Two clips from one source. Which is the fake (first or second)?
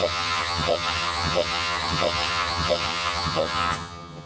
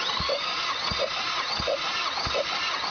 first